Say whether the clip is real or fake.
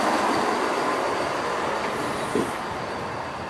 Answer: real